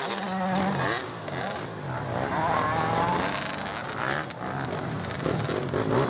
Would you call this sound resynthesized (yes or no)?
no